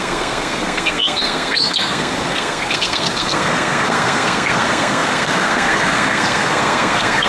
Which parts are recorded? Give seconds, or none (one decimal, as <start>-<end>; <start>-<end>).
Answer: none